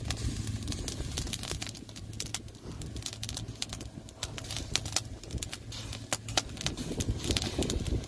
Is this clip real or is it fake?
real